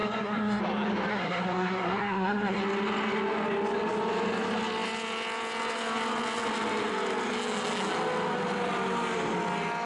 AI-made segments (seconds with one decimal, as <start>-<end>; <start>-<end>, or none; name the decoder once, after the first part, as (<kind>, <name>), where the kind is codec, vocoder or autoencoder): 0.0-0.6 (codec, SNAC); 1.1-2.6